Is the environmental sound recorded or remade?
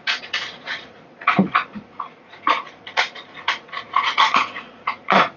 remade